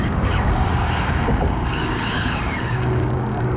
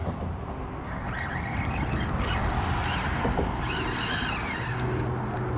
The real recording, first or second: second